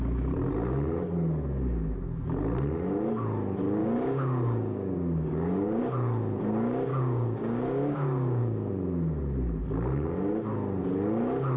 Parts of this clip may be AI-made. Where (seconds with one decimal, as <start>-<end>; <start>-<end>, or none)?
3.8-5.8; 6.9-8.7